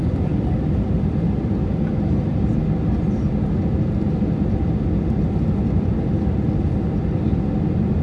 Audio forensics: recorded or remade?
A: recorded